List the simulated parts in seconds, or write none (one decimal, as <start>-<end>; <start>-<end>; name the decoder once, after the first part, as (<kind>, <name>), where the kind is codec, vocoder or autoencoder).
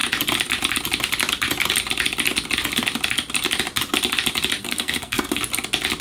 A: 4.6-5.4 (codec, SNAC)